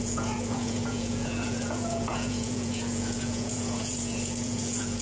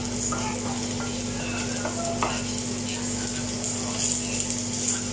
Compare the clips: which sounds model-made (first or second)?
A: first